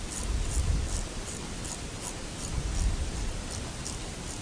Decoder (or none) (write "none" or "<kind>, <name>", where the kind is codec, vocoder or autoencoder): vocoder, BigVGAN v2